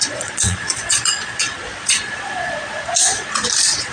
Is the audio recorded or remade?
remade